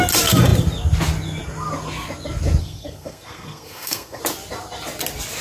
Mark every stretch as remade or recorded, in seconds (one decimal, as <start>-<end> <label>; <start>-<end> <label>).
0.0-2.6 recorded; 2.6-4.2 remade; 4.2-5.4 recorded